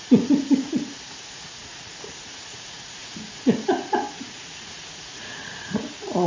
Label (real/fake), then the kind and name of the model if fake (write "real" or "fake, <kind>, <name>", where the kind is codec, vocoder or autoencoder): fake, vocoder, Vocos